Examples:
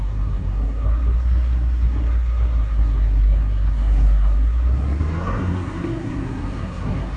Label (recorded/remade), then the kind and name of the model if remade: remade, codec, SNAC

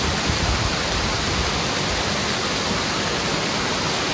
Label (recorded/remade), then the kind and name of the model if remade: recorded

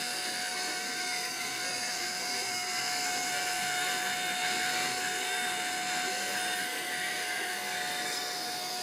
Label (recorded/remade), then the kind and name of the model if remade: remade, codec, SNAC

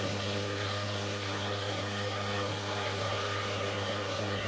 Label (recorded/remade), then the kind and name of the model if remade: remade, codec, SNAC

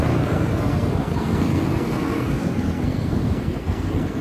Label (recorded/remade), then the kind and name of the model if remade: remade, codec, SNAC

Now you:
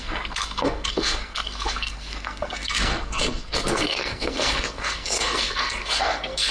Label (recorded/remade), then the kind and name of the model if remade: remade, codec, SNAC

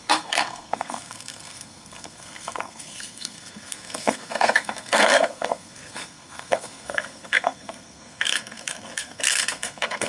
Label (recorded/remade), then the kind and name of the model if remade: remade, codec, SNAC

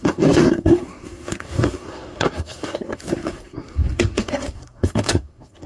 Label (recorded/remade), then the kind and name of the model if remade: remade, codec, SNAC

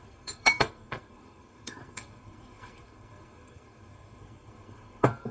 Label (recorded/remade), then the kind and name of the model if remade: remade, codec, SNAC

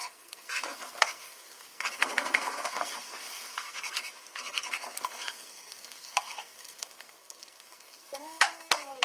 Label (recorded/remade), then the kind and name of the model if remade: remade, codec, SNAC